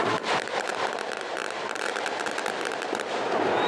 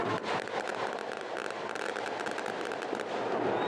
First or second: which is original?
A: second